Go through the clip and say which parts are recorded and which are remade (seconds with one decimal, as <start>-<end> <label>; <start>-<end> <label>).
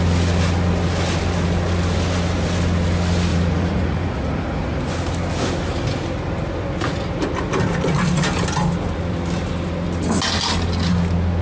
0.0-3.3 recorded; 3.3-4.9 remade; 4.9-11.4 recorded